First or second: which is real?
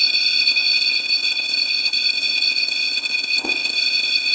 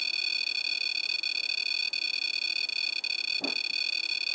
second